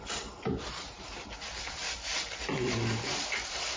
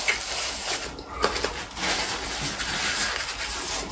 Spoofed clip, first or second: first